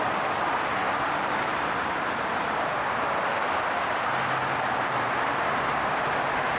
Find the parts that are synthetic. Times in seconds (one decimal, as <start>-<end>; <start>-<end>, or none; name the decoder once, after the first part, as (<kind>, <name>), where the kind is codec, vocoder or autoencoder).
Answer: none